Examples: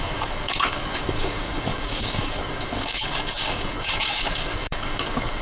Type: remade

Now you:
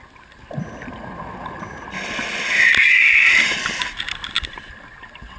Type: recorded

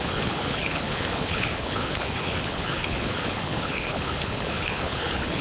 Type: remade